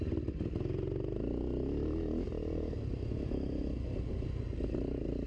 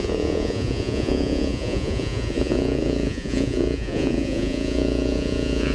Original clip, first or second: first